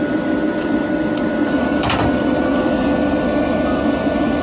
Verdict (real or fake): real